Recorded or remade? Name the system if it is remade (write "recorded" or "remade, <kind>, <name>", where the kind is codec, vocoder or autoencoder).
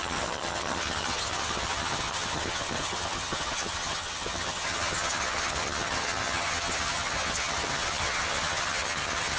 remade, vocoder, HiFi-GAN